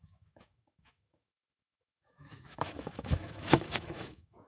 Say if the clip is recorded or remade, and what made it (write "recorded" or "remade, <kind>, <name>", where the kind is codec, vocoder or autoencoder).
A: remade, autoencoder, DAC-VAE